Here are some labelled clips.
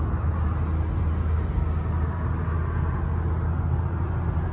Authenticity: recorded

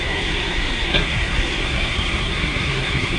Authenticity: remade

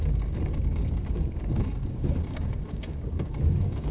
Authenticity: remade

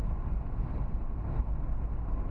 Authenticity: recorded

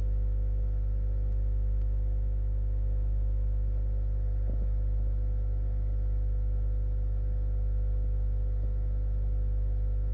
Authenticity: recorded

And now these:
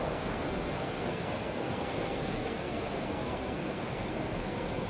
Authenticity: remade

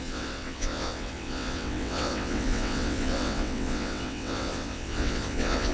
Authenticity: remade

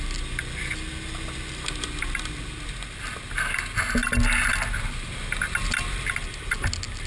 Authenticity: recorded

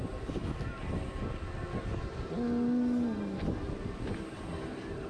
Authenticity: recorded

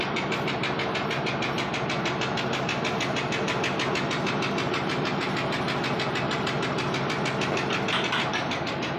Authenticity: recorded